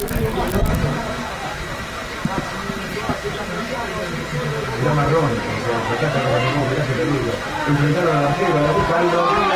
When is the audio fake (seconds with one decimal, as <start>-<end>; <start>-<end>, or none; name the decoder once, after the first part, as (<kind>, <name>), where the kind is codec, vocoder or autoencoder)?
none